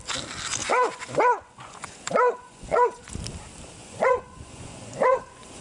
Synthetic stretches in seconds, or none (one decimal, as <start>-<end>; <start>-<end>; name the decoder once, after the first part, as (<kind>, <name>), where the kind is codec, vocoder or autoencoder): 0.6-3.1 (vocoder, Vocos); 3.8-5.6